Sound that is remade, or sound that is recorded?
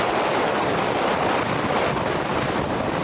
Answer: remade